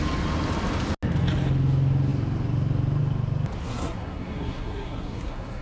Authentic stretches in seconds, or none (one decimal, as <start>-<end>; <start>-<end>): 0.0-3.6